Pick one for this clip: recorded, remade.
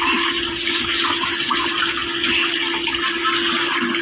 recorded